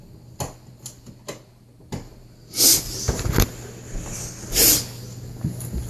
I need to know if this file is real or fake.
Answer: real